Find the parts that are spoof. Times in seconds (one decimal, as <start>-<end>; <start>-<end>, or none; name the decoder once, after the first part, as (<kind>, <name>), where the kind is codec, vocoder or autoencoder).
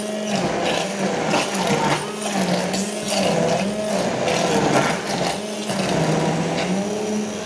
none